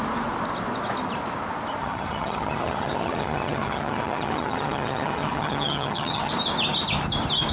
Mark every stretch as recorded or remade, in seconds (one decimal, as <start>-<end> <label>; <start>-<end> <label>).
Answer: 0.0-1.8 recorded; 1.8-6.3 remade; 6.3-7.5 recorded